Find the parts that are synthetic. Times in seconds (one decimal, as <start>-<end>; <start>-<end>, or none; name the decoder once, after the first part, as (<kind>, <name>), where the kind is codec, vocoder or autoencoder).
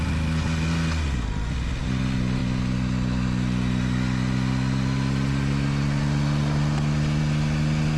none